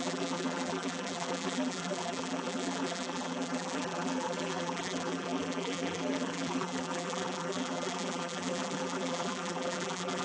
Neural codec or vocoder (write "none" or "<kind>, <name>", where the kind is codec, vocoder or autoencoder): vocoder, BigVGAN v2